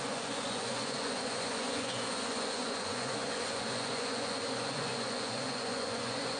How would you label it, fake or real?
fake